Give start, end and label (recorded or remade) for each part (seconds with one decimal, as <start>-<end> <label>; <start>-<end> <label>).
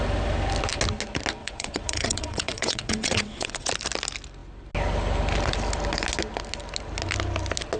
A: 0.0-1.4 recorded; 1.4-3.7 remade; 3.7-7.8 recorded